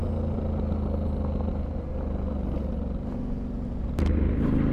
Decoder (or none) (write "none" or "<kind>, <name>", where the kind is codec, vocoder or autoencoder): none